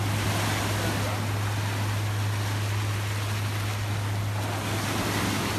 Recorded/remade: recorded